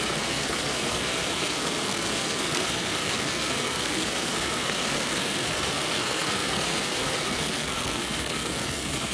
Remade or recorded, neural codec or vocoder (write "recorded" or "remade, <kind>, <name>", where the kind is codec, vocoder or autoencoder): remade, codec, SNAC